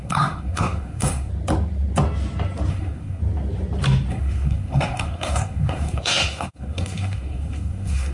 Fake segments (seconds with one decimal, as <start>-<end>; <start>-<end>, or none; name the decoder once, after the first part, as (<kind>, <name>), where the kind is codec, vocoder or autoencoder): 0.0-1.3 (codec, SNAC); 2.7-3.2; 4.1-8.1